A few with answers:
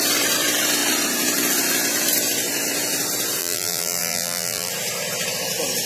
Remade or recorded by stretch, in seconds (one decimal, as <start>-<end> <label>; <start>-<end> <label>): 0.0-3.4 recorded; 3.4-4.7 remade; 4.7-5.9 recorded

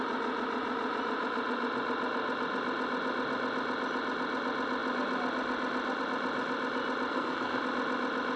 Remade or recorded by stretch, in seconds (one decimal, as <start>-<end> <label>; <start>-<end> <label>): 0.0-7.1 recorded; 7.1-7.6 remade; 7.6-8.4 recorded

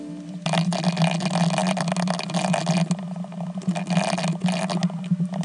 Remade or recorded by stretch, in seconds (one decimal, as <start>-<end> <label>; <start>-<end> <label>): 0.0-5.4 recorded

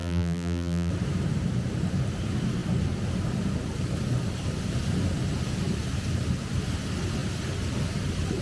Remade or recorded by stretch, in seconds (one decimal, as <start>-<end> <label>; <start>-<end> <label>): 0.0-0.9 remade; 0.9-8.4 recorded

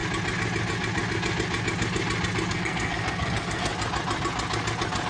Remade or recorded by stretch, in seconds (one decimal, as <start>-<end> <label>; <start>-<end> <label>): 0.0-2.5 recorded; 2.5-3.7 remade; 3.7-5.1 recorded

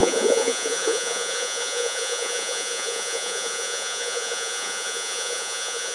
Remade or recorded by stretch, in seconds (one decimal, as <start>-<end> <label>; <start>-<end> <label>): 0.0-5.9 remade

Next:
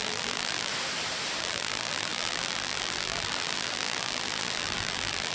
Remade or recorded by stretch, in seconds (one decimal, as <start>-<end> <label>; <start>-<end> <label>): 0.0-0.7 remade; 0.7-1.4 recorded; 1.4-5.3 remade